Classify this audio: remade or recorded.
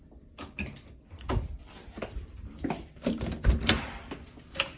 remade